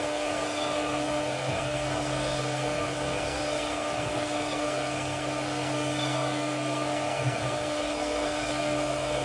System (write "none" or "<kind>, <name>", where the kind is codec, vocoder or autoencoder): codec, SNAC